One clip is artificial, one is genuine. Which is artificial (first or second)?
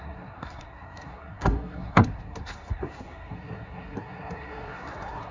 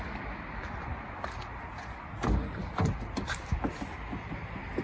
first